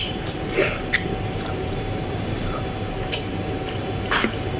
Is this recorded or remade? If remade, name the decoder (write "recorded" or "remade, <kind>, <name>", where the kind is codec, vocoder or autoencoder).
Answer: remade, vocoder, BigVGAN v2